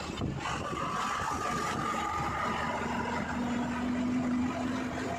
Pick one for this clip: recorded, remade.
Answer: recorded